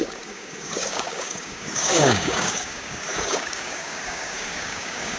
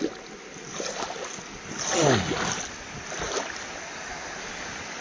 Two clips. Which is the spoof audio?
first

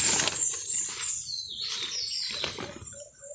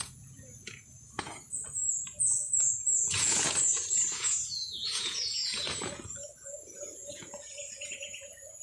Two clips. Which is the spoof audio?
second